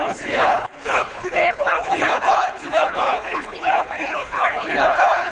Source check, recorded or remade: remade